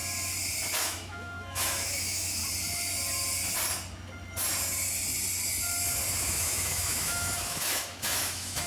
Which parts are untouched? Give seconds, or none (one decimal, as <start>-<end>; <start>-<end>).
0.0-0.8; 2.4-6.2